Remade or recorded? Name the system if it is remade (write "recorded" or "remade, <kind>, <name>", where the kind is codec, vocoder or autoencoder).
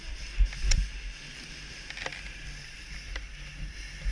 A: recorded